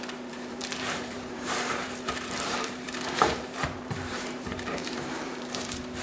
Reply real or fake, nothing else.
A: fake